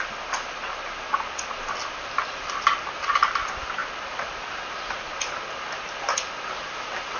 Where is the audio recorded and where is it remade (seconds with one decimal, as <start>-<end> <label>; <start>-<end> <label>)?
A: 0.0-7.2 recorded